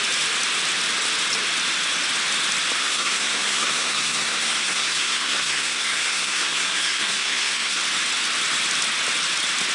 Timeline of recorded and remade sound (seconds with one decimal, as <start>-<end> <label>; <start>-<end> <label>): 0.0-2.8 recorded; 2.8-7.8 remade; 7.8-9.7 recorded